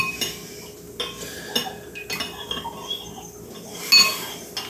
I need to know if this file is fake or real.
real